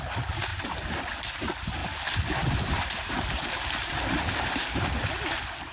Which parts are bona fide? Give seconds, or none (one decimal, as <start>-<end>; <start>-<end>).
0.0-0.5; 1.0-1.8; 4.9-5.7